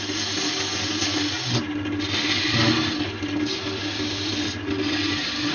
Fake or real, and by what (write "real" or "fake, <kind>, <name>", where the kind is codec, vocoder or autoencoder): real